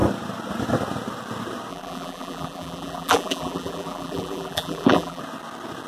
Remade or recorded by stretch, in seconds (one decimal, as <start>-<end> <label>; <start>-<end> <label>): 0.0-1.7 recorded; 1.7-5.2 remade; 5.2-5.9 recorded